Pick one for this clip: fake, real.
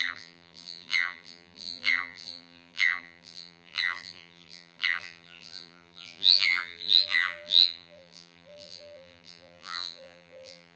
fake